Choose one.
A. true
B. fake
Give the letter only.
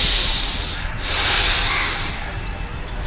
A